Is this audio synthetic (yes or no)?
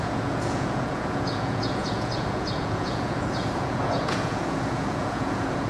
yes